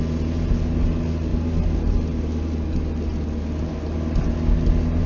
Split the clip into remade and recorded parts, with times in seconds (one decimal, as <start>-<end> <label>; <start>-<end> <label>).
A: 0.0-5.1 recorded